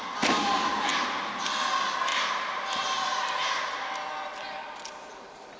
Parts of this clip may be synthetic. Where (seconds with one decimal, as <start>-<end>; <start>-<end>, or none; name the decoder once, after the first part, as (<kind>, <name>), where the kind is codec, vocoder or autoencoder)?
2.1-3.9 (vocoder, BigVGAN v2)